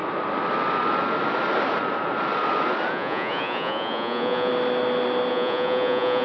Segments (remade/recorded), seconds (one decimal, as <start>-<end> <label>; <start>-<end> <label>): 0.0-2.9 recorded; 2.9-4.5 remade; 4.5-5.3 recorded; 5.3-6.2 remade